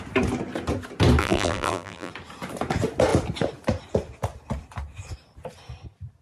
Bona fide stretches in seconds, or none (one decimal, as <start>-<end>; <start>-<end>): 0.0-1.2; 2.1-6.2